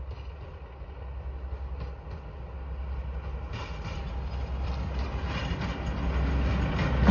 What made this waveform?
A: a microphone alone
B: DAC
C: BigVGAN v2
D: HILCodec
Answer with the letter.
A